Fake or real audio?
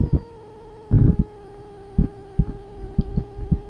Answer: real